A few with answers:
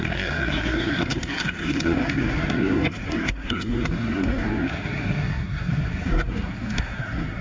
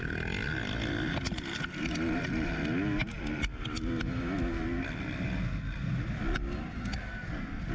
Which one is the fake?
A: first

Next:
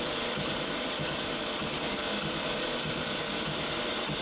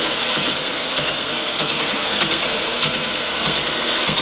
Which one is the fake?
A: second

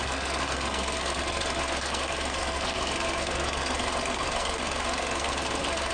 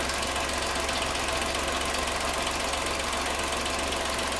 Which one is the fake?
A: first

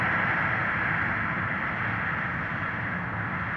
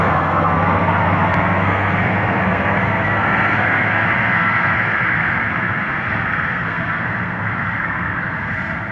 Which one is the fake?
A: second